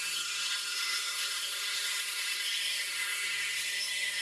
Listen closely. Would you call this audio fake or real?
fake